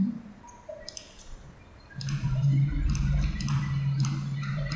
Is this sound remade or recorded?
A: remade